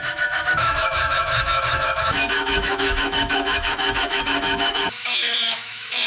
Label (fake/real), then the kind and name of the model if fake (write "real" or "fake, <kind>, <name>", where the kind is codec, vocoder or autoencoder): fake, autoencoder, DAC-VAE